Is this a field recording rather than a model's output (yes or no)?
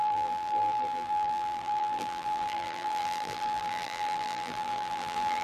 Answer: no